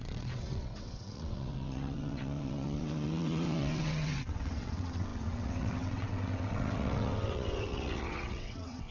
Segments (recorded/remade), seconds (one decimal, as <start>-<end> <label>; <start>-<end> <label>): 0.0-8.9 remade